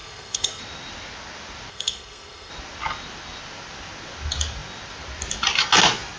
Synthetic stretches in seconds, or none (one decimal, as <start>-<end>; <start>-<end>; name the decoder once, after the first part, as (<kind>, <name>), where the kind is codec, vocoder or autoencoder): 0.0-0.6 (codec, SNAC); 1.7-2.5